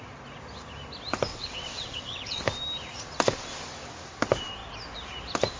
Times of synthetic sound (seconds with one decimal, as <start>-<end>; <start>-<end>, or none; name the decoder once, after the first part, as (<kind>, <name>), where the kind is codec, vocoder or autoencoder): 1.3-2.4 (vocoder, WaveNeXt)